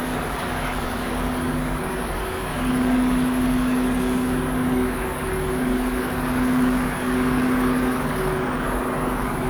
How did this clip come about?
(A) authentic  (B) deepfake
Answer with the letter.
B